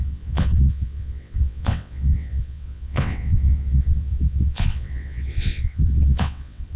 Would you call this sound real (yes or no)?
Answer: no